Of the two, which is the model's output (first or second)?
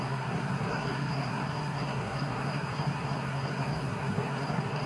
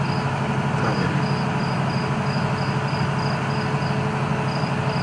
first